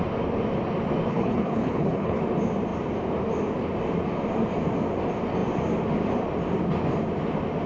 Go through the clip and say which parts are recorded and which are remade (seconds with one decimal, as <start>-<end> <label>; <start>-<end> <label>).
0.0-1.1 recorded; 1.1-2.2 remade; 2.2-7.7 recorded